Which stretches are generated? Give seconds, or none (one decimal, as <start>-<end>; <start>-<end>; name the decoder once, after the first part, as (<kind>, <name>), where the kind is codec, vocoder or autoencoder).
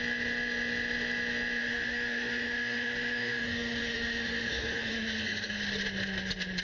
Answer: 1.6-5.6 (autoencoder, DAC-VAE)